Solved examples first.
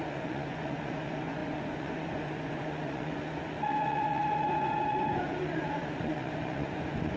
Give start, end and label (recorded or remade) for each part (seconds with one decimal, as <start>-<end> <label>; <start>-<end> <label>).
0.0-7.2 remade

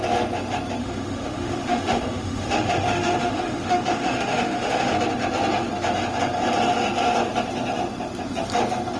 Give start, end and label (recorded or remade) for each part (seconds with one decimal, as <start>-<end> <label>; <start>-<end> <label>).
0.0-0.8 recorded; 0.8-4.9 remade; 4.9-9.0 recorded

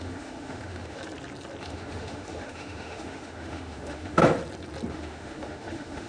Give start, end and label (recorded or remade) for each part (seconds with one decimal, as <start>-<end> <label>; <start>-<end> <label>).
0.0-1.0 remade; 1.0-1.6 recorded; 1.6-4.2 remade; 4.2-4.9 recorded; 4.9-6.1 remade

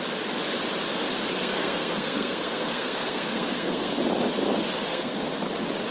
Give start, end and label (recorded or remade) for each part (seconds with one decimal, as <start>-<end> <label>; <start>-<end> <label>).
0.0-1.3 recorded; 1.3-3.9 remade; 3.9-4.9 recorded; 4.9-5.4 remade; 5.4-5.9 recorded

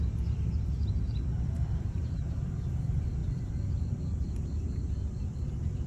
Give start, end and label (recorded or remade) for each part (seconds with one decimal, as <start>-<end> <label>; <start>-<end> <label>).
0.0-5.9 recorded

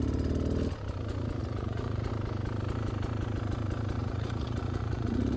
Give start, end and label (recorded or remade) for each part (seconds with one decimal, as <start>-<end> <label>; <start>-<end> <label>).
0.0-1.4 recorded; 1.4-2.1 remade; 2.1-4.0 recorded; 4.0-5.4 remade